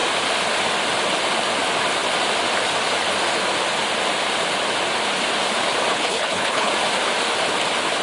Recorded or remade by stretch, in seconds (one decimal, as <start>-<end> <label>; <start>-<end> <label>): 0.0-5.9 recorded; 5.9-6.7 remade; 6.7-8.0 recorded